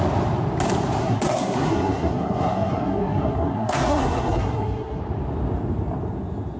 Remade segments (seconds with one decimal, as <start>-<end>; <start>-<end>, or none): 1.0-5.0

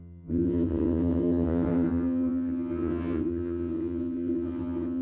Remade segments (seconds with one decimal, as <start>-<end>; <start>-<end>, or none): 0.0-5.0

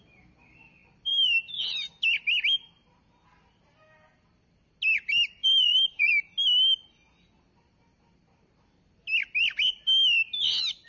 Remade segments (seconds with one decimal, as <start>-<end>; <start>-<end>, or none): 0.8-1.7; 5.4-6.1

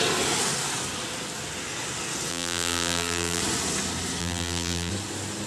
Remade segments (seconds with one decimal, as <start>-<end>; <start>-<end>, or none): 2.3-3.4; 4.2-4.9

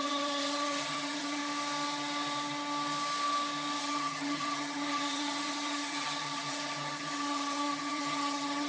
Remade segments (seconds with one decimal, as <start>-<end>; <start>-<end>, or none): 0.0-1.4; 3.8-8.7